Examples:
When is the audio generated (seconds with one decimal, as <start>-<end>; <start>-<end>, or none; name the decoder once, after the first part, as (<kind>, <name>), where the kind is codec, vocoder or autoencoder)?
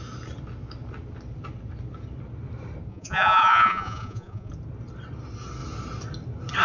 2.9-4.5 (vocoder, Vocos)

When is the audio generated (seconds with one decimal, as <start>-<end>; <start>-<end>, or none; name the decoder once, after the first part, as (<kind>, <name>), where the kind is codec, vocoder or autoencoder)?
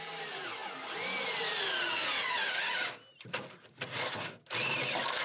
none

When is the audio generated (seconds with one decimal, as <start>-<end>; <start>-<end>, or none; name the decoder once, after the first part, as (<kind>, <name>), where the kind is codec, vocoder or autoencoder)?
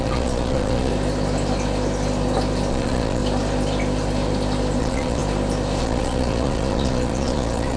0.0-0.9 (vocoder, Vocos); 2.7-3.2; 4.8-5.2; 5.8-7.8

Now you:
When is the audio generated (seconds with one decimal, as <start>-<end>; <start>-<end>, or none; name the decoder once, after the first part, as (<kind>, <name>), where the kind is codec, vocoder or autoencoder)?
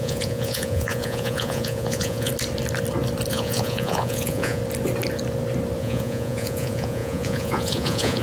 0.0-2.3 (vocoder, Vocos); 3.3-4.6; 5.8-8.2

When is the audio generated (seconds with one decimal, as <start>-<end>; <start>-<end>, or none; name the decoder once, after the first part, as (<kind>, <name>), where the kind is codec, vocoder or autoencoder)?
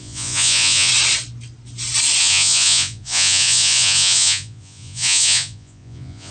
0.0-0.9 (vocoder, Vocos); 2.2-6.3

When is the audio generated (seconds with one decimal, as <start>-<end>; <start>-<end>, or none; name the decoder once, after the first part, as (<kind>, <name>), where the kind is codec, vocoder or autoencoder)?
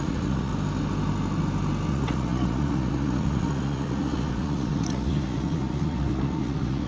0.0-0.5 (vocoder, Vocos); 1.9-6.9